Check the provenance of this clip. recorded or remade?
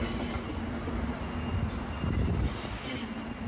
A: recorded